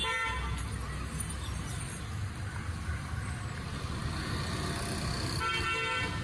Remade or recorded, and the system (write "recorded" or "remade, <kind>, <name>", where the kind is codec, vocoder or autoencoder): recorded